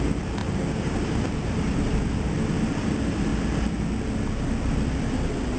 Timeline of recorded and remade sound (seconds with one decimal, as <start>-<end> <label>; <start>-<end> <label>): 0.0-3.3 remade; 3.3-5.6 recorded